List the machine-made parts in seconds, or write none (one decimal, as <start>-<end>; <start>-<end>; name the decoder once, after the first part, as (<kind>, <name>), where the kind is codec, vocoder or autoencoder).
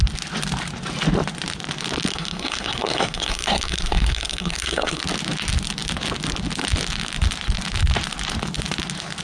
2.1-5.0 (codec, SNAC)